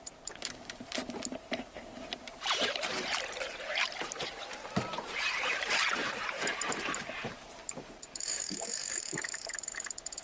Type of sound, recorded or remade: remade